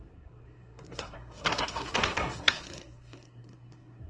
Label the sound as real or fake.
fake